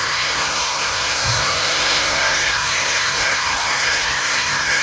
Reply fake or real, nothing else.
fake